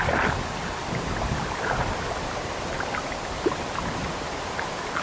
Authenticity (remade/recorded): recorded